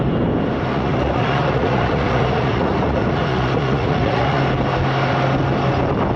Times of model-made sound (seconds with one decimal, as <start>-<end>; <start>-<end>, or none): 0.7-4.4